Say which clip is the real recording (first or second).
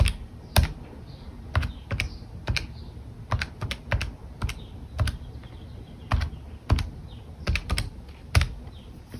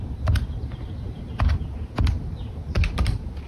first